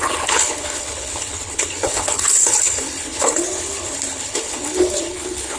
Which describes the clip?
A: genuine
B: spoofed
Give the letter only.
B